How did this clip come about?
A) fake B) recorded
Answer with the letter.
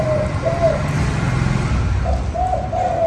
B